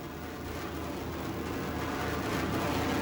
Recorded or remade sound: recorded